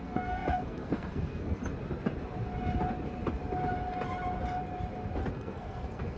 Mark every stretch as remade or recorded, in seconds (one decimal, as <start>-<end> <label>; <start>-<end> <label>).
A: 0.0-1.6 remade; 1.6-5.3 recorded; 5.3-6.2 remade